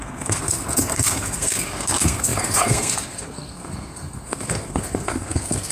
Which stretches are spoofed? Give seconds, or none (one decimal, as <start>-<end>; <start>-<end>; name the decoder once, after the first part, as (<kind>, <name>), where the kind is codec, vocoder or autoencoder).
0.0-5.7 (codec, SNAC)